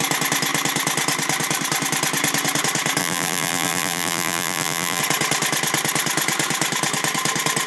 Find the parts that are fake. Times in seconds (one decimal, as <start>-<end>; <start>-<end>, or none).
3.0-5.0